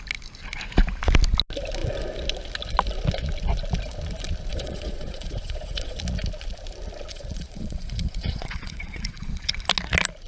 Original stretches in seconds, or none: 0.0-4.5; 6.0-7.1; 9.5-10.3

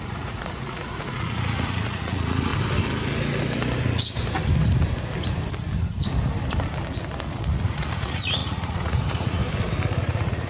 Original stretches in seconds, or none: 2.5-7.2; 9.4-10.0